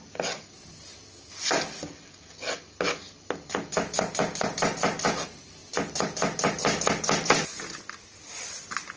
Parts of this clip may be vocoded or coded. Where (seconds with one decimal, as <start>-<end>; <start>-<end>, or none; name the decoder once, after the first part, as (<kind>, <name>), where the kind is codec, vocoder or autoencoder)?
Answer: none